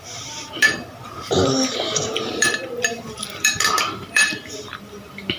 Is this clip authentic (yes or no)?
no